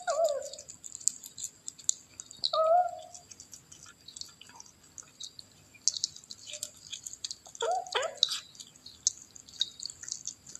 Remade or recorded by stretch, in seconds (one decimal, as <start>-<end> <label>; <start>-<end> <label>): 0.0-10.6 recorded